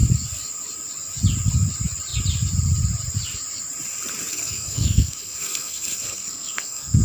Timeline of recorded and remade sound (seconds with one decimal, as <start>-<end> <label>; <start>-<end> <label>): 0.0-4.3 recorded; 4.3-7.0 remade